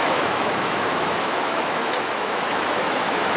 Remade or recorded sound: remade